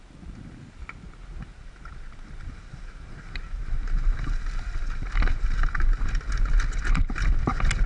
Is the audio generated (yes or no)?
no